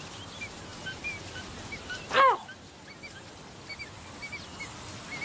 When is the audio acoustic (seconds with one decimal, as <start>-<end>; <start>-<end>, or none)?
0.0-5.2